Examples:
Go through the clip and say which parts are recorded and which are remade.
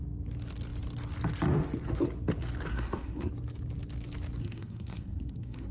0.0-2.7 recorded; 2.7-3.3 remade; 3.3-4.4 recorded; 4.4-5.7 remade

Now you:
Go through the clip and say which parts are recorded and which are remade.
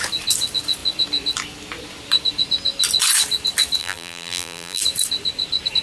0.0-3.8 recorded; 3.8-4.8 remade; 4.8-5.8 recorded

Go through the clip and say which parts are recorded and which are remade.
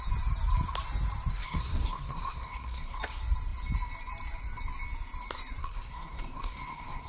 0.0-1.4 recorded; 1.4-3.0 remade; 3.0-5.6 recorded; 5.6-7.1 remade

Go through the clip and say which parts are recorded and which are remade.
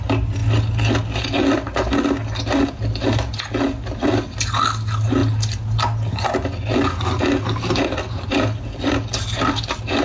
0.0-10.0 recorded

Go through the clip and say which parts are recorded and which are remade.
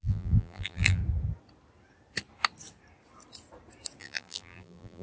0.0-1.0 remade; 1.0-4.0 recorded; 4.0-5.0 remade